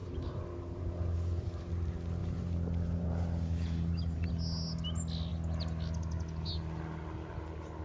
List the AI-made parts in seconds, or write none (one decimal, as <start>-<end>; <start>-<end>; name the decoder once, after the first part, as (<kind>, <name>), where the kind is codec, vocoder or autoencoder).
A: 0.0-1.7 (vocoder, BigVGAN v2); 2.2-4.3